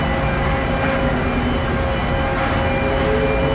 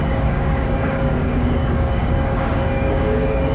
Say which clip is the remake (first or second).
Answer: second